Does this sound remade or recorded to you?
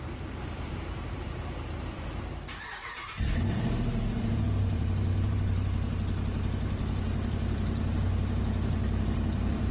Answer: remade